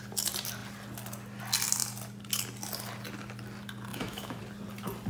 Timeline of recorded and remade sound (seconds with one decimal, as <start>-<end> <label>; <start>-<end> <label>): 0.0-3.9 recorded; 3.9-4.4 remade; 4.4-5.1 recorded